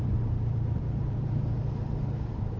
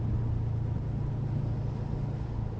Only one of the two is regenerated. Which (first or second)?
first